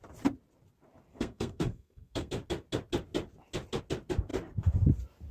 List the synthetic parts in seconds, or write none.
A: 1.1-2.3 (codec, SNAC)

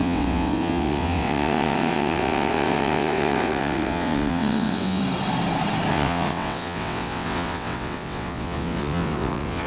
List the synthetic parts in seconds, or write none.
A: 0.0-5.0 (vocoder, WaveNeXt); 5.9-9.7

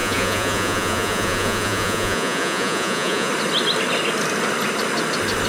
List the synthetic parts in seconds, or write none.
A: 0.0-3.3 (vocoder, Vocos)